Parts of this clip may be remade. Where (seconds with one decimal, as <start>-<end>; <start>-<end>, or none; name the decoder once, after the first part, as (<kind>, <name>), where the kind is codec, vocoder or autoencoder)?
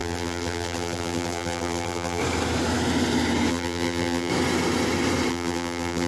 0.0-2.2 (vocoder, BigVGAN v2); 3.5-4.3; 5.3-6.1